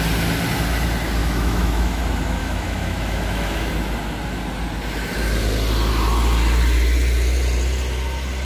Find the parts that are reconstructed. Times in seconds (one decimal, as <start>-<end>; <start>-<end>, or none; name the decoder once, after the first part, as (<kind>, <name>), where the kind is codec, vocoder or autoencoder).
1.2-2.0 (autoencoder, DAC-VAE); 2.4-3.7